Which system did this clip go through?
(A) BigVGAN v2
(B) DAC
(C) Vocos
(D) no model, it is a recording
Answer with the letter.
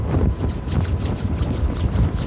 D